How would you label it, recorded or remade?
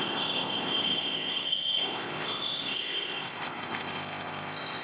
remade